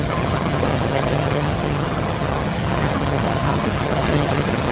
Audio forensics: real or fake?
fake